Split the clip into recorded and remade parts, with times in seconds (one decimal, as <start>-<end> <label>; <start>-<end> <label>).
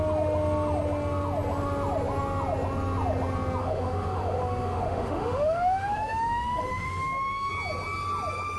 0.0-3.6 recorded; 3.6-7.5 remade; 7.5-8.6 recorded